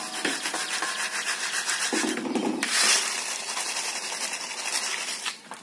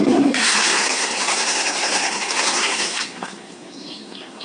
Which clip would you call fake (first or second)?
second